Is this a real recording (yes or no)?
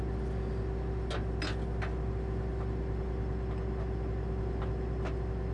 yes